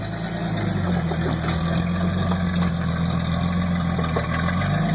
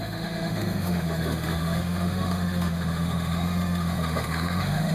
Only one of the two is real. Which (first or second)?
first